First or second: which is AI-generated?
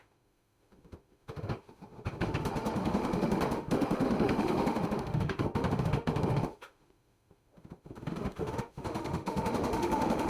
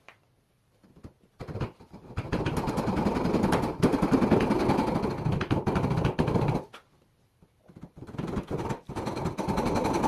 first